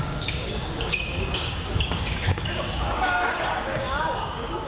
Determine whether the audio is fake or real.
fake